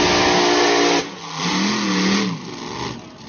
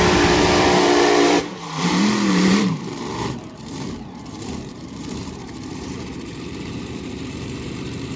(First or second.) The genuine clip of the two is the first